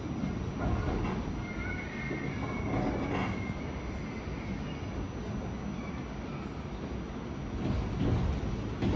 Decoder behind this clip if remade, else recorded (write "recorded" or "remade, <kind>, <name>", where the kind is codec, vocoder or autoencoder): recorded